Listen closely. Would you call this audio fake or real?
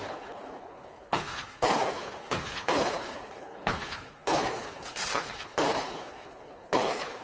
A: fake